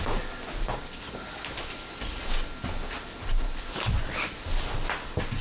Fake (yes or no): no